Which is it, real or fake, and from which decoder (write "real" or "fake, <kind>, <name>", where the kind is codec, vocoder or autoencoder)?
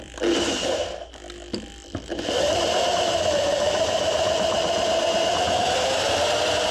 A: fake, vocoder, BigVGAN v2